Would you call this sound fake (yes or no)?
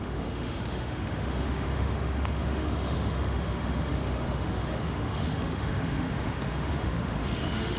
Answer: yes